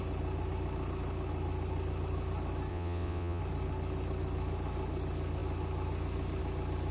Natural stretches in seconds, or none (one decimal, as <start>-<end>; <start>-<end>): 0.0-2.7; 3.4-6.9